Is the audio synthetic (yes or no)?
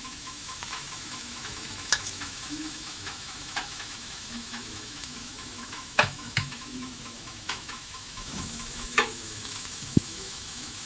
yes